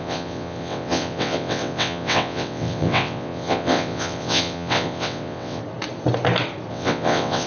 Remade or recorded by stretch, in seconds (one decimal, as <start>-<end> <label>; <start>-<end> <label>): 0.0-5.6 remade; 5.6-6.7 recorded; 6.7-7.5 remade